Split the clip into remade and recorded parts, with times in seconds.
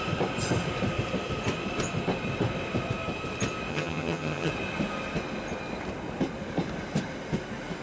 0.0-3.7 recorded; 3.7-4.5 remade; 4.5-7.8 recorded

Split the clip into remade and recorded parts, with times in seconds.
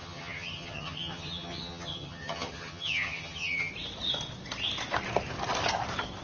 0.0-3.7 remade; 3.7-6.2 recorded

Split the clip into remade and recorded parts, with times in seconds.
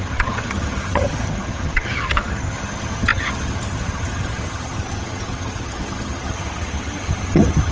0.0-7.7 remade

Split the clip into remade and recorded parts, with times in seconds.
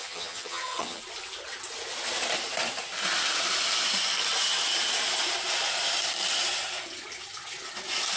0.0-1.0 remade; 1.0-8.2 recorded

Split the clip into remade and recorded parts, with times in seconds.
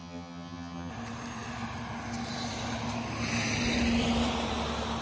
0.0-0.9 remade; 0.9-5.0 recorded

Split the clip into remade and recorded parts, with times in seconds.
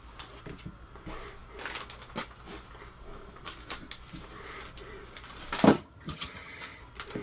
0.0-5.7 recorded; 5.7-6.8 remade; 6.8-7.2 recorded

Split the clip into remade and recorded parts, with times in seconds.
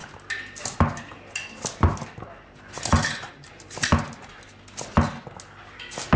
0.0-6.2 recorded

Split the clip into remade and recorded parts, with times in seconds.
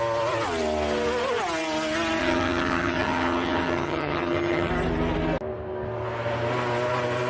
0.0-2.2 recorded; 2.2-4.7 remade; 4.7-7.3 recorded